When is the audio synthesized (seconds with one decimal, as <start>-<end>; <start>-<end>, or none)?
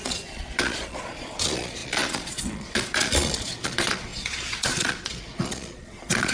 0.0-6.3